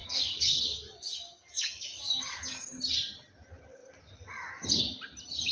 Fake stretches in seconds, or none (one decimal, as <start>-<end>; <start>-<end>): 0.0-2.8